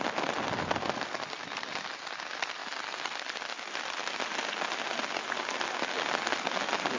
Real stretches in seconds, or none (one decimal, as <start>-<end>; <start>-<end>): 0.0-7.0